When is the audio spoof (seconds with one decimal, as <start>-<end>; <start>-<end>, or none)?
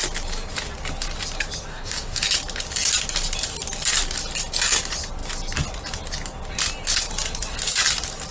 1.7-2.2